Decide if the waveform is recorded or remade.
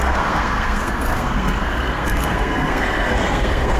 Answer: remade